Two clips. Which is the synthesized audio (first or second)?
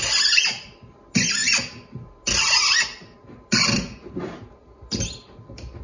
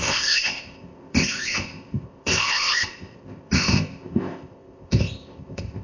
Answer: second